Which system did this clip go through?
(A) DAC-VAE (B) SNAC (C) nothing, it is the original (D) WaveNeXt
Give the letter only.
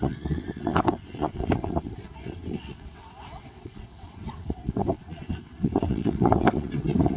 D